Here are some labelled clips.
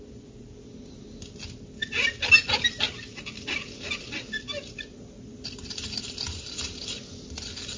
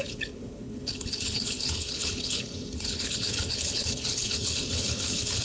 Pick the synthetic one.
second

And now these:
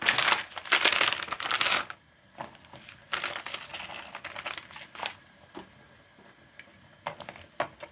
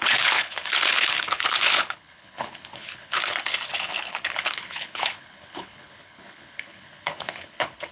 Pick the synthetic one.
second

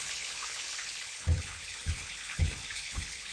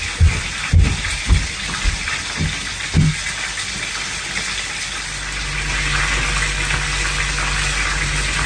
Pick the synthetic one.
first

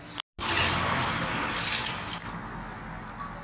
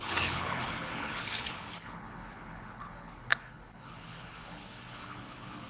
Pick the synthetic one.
second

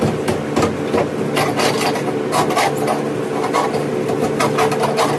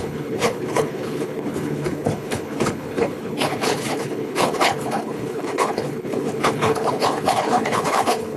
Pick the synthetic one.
second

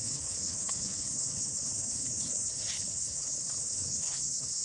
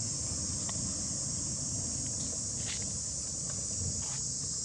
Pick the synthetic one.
first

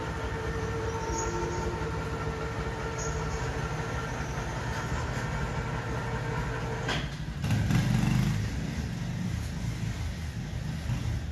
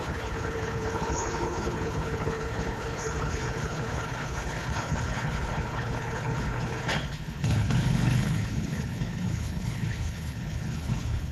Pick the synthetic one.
second